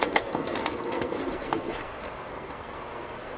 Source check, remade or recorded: remade